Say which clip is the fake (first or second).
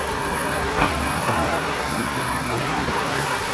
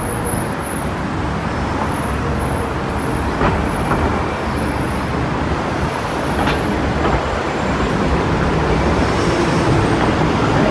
first